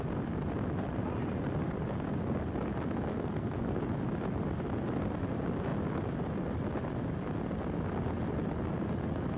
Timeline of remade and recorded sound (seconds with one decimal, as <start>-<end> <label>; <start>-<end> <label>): 0.0-3.1 recorded; 3.1-3.8 remade; 3.8-9.4 recorded